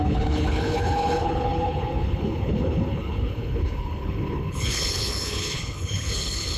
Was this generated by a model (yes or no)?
yes